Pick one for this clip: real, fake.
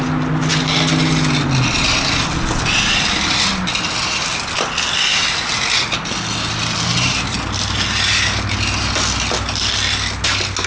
real